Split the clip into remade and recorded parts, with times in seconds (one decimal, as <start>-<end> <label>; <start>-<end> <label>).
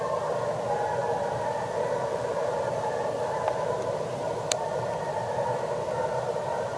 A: 0.0-6.8 recorded